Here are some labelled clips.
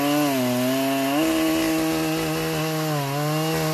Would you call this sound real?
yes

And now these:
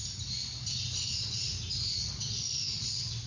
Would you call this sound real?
yes